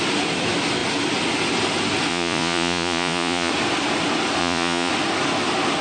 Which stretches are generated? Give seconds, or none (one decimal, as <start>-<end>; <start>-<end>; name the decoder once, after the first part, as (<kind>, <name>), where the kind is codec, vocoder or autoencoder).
2.1-3.5 (vocoder, Vocos); 4.4-4.9